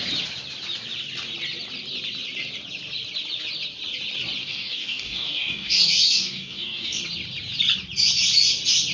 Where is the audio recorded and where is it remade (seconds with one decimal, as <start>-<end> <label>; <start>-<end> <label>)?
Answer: 0.0-4.4 recorded; 4.4-7.0 remade; 7.0-8.9 recorded